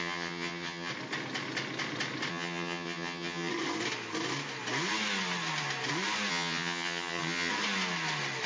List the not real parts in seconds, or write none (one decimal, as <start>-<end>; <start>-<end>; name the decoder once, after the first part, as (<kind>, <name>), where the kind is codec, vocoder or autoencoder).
0.0-0.9 (vocoder, HiFi-GAN); 2.3-3.5; 6.3-7.5

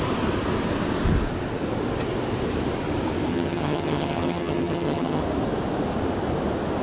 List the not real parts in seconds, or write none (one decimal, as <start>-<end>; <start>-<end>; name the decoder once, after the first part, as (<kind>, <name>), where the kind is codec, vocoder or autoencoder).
3.3-5.2 (vocoder, HiFi-GAN)

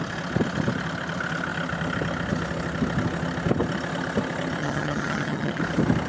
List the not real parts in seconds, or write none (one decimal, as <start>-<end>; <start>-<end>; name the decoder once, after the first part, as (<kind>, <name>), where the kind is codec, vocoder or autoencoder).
4.6-5.6 (vocoder, HiFi-GAN)

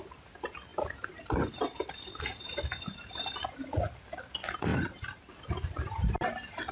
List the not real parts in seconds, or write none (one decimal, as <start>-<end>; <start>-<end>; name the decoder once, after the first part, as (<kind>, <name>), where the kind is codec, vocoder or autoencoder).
none